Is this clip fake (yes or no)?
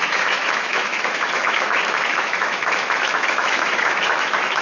yes